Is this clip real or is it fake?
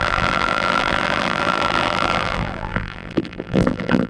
fake